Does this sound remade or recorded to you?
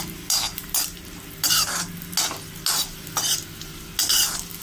recorded